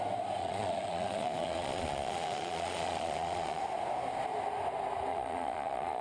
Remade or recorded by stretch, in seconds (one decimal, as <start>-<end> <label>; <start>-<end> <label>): 0.0-0.4 recorded; 0.4-3.6 remade; 3.6-5.1 recorded; 5.1-6.0 remade